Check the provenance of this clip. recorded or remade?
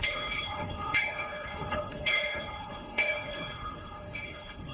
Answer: remade